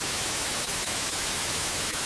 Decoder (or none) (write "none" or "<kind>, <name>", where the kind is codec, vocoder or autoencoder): autoencoder, DAC-VAE